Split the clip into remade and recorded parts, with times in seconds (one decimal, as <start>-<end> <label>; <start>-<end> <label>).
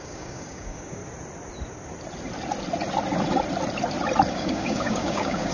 0.0-1.0 remade; 1.0-4.3 recorded; 4.3-5.5 remade